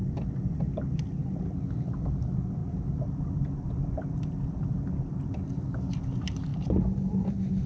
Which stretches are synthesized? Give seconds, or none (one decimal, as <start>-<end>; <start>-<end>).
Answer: 0.0-0.6